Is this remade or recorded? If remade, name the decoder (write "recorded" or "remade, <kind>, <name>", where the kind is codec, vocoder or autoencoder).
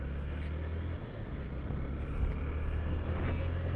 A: recorded